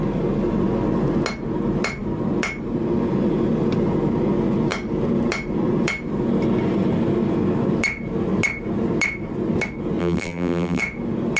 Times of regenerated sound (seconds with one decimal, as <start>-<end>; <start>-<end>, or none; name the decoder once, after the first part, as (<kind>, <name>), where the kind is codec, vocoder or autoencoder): 10.0-10.8 (vocoder, BigVGAN v2)